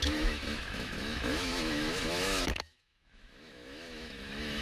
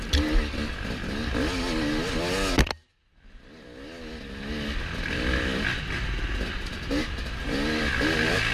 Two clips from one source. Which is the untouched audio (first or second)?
second